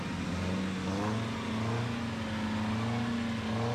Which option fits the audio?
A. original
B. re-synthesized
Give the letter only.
A